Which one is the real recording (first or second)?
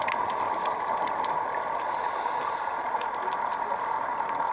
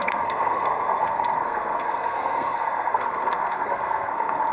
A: first